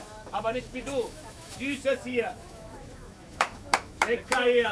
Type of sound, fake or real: fake